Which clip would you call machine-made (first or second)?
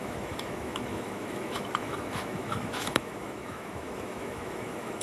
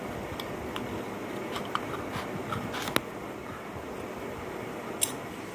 first